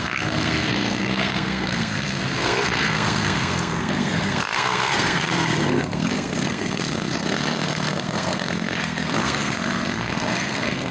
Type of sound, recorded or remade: remade